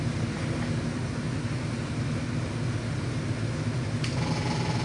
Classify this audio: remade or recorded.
recorded